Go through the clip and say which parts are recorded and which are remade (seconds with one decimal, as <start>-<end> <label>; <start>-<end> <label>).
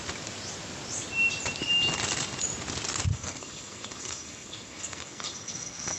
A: 0.0-3.1 recorded; 3.1-6.0 remade